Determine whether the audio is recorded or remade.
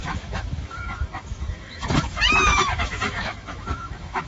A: remade